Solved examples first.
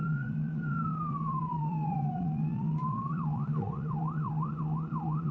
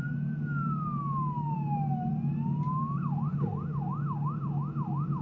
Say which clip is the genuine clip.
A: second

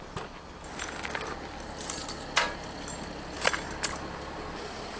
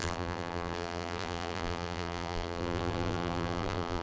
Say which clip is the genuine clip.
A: first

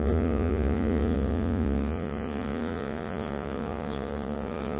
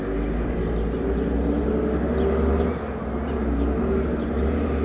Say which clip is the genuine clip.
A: second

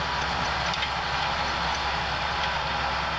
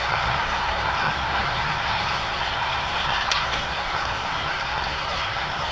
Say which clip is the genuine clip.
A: first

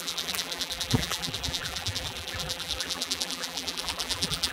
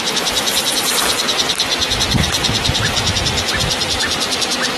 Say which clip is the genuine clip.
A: second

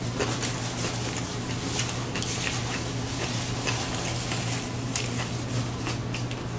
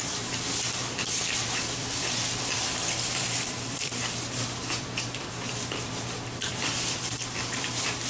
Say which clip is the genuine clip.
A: first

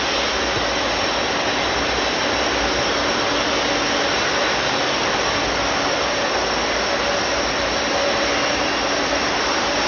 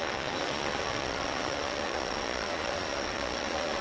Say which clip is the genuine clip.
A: first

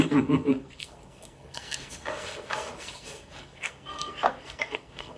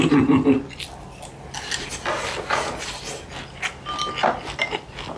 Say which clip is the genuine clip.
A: second